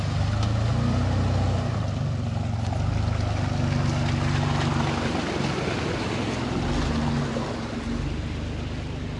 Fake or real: real